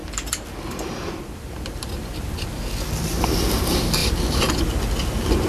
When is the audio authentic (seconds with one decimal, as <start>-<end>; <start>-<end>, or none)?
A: 3.3-4.0; 4.6-5.5

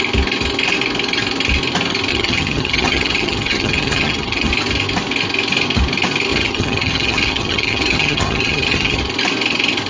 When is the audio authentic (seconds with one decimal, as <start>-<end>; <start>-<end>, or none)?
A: 0.0-2.1; 4.5-6.3; 9.0-9.9

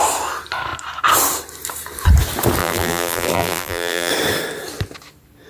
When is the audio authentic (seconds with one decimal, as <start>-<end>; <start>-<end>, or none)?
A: 0.0-2.6; 4.1-5.5

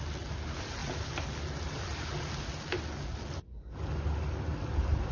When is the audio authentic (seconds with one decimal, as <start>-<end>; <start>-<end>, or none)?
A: 0.0-5.1

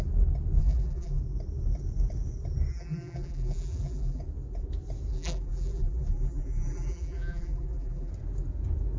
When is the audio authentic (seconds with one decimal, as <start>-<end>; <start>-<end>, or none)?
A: 0.0-0.6; 1.2-2.7; 4.2-5.1; 8.1-9.0

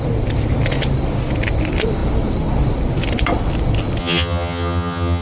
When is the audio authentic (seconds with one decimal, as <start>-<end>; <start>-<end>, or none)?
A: 0.0-4.0

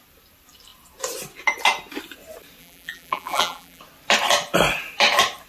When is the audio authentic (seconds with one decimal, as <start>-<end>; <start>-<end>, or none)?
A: 0.0-2.6; 3.8-5.5

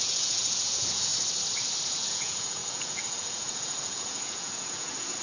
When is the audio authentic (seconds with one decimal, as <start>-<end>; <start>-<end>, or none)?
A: 1.1-1.9